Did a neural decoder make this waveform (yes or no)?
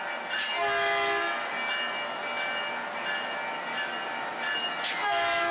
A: no